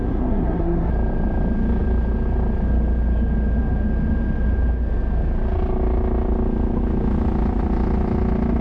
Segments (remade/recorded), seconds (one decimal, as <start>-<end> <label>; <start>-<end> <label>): 0.0-0.9 remade; 0.9-8.6 recorded